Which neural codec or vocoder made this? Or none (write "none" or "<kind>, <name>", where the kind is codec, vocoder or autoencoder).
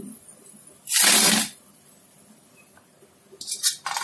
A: none